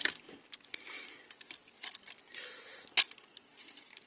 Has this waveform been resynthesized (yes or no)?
no